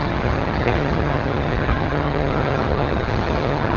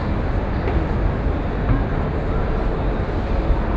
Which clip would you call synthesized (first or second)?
first